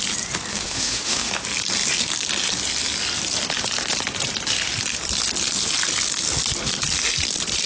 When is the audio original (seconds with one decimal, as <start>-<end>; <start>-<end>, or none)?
0.0-0.5; 1.3-7.7